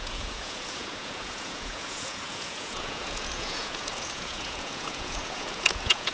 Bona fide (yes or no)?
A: no